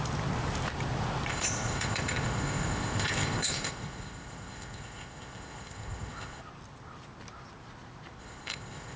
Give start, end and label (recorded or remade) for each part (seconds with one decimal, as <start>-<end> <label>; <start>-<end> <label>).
0.0-1.3 recorded; 1.3-6.4 remade; 6.4-8.2 recorded; 8.2-9.0 remade